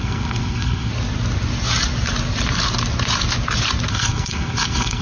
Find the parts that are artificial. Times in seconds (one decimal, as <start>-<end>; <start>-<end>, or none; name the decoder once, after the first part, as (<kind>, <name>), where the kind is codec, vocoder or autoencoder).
0.0-0.9 (codec, SNAC); 3.9-5.0